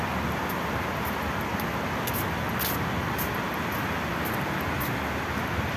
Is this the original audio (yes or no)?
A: yes